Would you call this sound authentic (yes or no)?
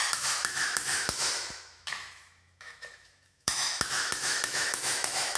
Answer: no